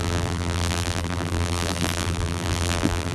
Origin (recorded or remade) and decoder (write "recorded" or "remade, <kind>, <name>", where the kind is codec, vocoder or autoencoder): remade, vocoder, BigVGAN v2